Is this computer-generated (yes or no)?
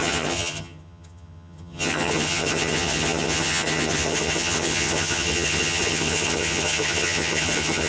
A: yes